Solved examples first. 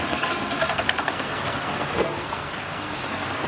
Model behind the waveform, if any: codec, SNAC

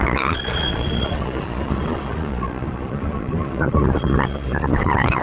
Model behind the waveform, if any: vocoder, Vocos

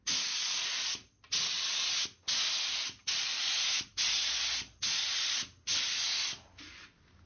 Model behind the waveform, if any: none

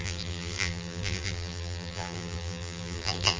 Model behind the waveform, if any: vocoder, BigVGAN v2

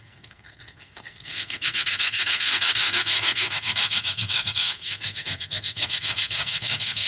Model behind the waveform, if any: codec, SNAC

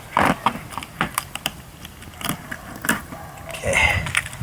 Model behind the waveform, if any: none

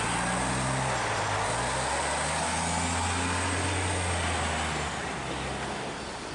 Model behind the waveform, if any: none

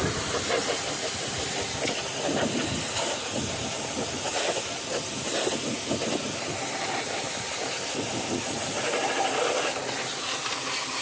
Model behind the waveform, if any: none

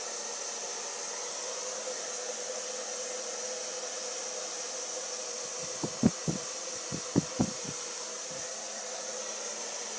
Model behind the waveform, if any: none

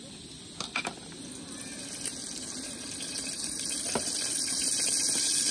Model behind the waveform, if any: vocoder, BigVGAN v2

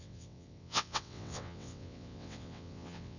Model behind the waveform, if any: vocoder, WaveNeXt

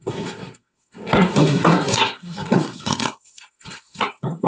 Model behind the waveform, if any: codec, SNAC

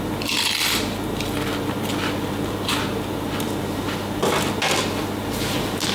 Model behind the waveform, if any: none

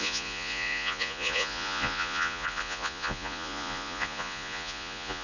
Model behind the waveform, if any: vocoder, Vocos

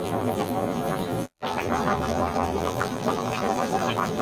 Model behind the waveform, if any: vocoder, BigVGAN v2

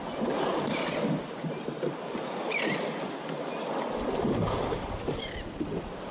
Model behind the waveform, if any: none